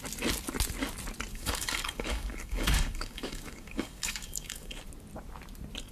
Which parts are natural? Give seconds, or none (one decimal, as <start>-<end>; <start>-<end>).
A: 0.0-1.3; 4.8-5.9